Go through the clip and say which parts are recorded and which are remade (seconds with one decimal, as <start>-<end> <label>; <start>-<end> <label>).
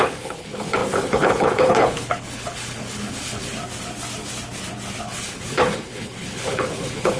0.0-3.6 remade; 3.6-5.0 recorded; 5.0-7.2 remade